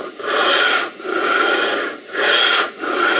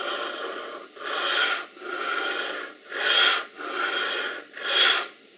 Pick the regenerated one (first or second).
first